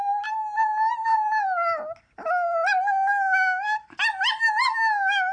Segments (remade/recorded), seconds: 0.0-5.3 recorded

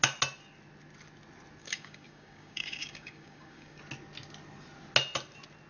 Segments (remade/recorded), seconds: 0.0-1.6 recorded; 1.6-3.8 remade; 3.8-5.7 recorded

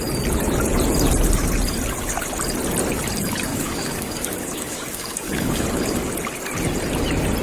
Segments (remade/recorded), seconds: 0.0-3.5 recorded; 3.5-6.1 remade; 6.1-7.4 recorded

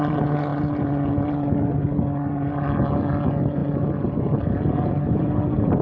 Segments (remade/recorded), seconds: 0.0-5.8 recorded

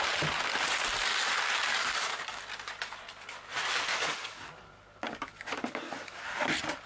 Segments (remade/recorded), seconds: 0.0-1.7 recorded; 1.7-2.4 remade; 2.4-3.9 recorded; 3.9-6.5 remade; 6.5-6.9 recorded

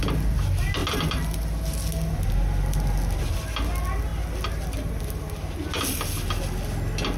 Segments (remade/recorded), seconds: 0.0-7.2 recorded

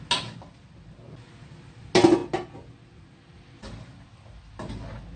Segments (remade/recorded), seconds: 0.0-5.2 recorded